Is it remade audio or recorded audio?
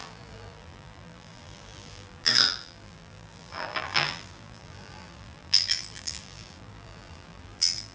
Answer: remade